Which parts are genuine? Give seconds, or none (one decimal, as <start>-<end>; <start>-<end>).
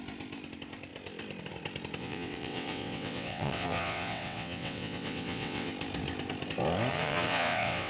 0.0-2.0; 5.7-6.9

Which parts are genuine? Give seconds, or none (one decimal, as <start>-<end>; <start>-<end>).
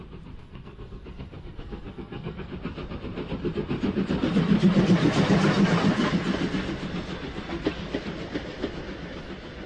0.0-0.4; 2.5-9.7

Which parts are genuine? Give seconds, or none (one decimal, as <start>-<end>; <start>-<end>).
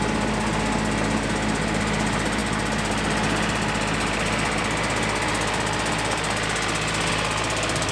0.0-7.9